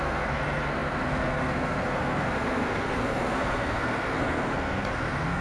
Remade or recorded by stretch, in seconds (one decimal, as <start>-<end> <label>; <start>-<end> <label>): 0.0-5.4 remade